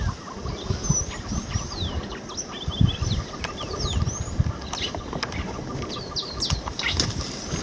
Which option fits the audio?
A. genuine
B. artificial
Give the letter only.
A